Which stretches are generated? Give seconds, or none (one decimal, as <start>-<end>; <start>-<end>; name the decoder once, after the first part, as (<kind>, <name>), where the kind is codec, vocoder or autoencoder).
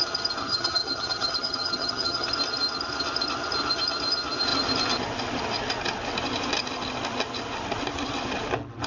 0.4-2.3 (vocoder, HiFi-GAN)